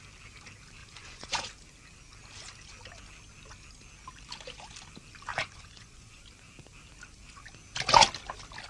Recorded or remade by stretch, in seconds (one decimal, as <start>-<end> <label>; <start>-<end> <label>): 0.0-0.8 recorded; 0.8-1.5 remade; 1.5-5.3 recorded; 5.3-6.2 remade; 6.2-8.7 recorded